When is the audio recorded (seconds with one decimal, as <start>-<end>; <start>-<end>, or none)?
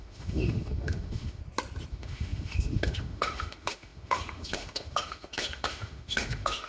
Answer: 1.4-1.9